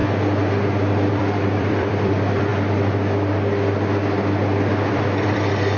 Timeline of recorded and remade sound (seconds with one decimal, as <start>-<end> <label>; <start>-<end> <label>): 0.0-1.1 recorded; 1.1-2.5 remade; 2.5-4.9 recorded; 4.9-5.8 remade